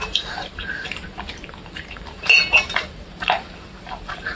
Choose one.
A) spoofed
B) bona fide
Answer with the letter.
A